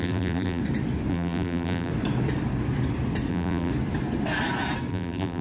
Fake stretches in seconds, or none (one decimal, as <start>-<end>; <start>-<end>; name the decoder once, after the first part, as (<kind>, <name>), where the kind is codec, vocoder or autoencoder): 0.0-0.6 (vocoder, BigVGAN v2); 1.1-1.9; 3.3-3.7; 4.9-5.4